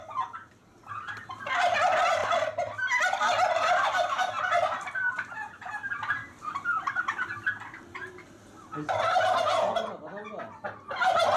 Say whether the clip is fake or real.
real